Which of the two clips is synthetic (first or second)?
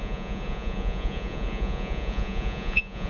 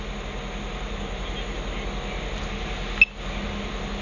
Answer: first